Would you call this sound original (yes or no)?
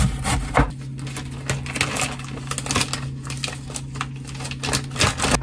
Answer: yes